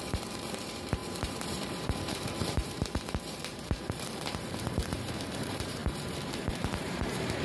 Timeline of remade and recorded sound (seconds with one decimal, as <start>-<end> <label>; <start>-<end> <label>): 0.0-7.4 remade